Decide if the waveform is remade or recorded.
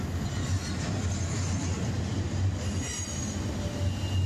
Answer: recorded